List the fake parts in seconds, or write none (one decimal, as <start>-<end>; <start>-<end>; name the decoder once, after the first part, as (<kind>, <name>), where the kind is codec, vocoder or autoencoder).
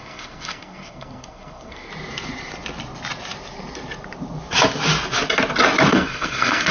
0.0-1.9 (codec, SNAC); 5.9-6.7